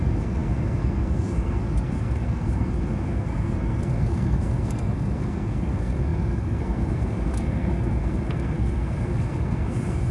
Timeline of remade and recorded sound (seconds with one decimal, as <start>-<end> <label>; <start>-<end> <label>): 0.0-10.1 remade